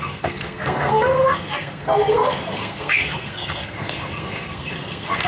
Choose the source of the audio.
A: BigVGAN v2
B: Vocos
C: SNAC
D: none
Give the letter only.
C